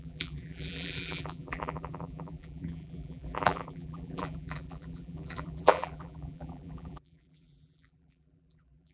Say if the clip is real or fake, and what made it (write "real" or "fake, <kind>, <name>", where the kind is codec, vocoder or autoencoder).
fake, vocoder, BigVGAN v2